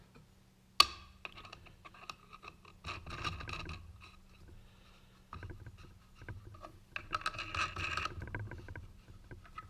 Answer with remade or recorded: recorded